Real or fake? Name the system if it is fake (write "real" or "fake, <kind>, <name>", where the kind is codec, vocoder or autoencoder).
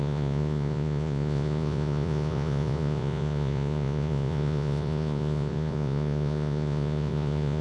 fake, vocoder, Vocos